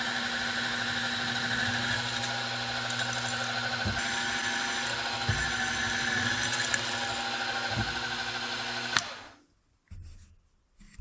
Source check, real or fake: real